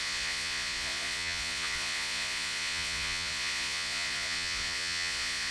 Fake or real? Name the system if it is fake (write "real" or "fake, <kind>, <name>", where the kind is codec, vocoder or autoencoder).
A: fake, vocoder, Vocos